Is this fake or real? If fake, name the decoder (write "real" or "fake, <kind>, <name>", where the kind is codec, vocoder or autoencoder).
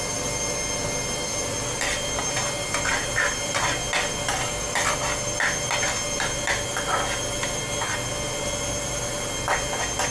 real